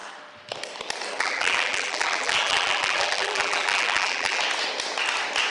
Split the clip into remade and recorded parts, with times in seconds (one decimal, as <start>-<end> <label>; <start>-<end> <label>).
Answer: 0.0-1.1 recorded; 1.1-4.4 remade; 4.4-5.5 recorded